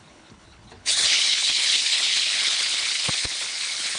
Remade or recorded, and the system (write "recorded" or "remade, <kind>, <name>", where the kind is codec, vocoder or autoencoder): remade, codec, HILCodec